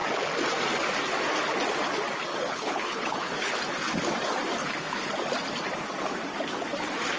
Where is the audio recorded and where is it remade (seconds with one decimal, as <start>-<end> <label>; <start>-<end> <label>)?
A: 0.0-2.3 recorded; 2.3-3.6 remade; 3.6-4.6 recorded; 4.6-5.1 remade; 5.1-7.2 recorded